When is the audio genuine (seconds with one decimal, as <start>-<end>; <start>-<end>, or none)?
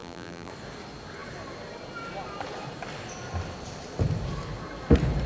0.5-5.3